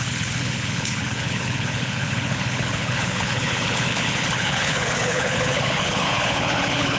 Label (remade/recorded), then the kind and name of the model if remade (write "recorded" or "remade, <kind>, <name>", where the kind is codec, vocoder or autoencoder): remade, codec, HILCodec